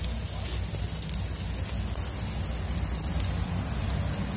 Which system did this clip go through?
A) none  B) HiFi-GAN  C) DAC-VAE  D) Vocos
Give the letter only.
A